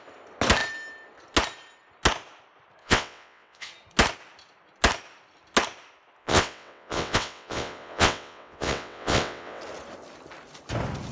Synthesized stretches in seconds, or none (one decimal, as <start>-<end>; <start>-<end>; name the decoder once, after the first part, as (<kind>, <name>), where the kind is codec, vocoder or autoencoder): 2.8-3.7 (vocoder, WaveNeXt); 6.2-9.6